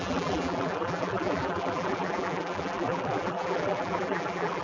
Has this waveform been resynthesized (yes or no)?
yes